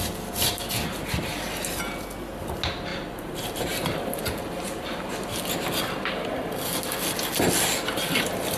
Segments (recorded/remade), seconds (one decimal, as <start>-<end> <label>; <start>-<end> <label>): 0.0-2.9 recorded; 2.9-4.2 remade; 4.2-8.6 recorded